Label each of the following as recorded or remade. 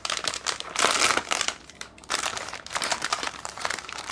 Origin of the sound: remade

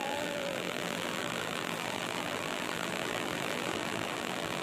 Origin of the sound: remade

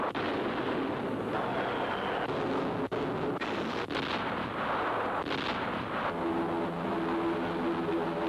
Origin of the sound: recorded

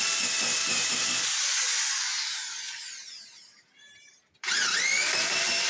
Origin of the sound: recorded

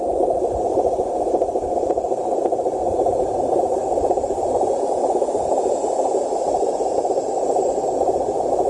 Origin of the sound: remade